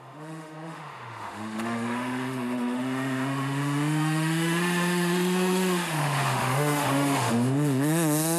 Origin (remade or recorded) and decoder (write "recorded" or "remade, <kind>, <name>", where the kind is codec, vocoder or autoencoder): remade, autoencoder, DAC-VAE